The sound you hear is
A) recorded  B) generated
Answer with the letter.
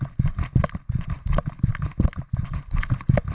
A